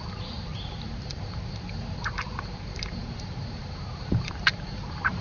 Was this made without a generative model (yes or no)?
no